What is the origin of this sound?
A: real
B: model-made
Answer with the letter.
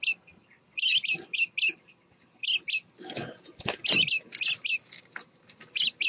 A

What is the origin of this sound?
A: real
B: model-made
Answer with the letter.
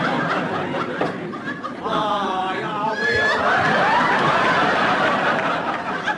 B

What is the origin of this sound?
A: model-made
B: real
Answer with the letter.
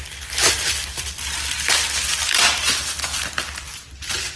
B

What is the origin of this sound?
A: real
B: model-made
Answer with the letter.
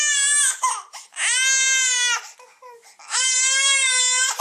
A